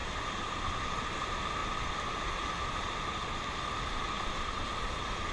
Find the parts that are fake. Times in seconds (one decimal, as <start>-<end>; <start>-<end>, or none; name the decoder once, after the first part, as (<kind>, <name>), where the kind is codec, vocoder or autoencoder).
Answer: 0.0-1.2 (vocoder, BigVGAN v2); 1.6-2.3; 3.2-5.3